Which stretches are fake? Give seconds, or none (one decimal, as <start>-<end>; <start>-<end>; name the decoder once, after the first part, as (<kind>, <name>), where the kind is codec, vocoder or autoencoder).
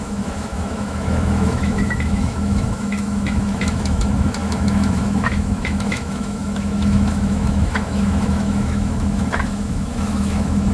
0.0-10.7 (autoencoder, DAC-VAE)